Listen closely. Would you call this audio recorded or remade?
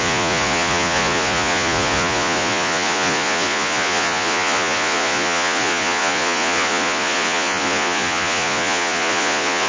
remade